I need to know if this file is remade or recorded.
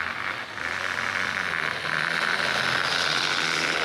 recorded